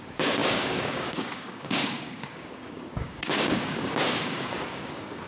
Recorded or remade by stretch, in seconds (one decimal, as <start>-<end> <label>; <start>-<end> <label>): 0.0-5.3 remade